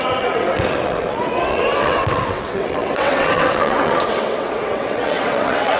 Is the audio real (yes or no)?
no